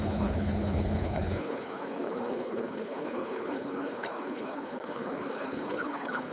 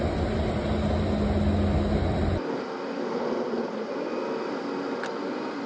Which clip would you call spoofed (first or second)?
first